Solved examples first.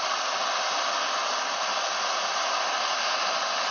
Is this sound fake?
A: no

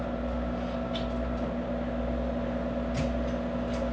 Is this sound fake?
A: no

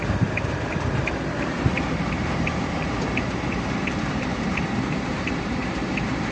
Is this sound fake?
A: yes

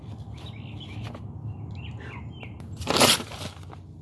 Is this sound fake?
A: no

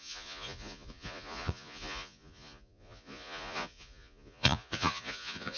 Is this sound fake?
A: yes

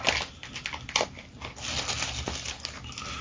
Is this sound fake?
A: no